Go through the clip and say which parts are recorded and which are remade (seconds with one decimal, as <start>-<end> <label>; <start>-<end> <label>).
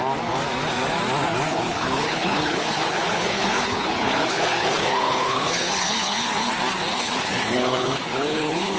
0.0-1.5 recorded; 1.5-6.5 remade; 6.5-6.9 recorded; 6.9-8.8 remade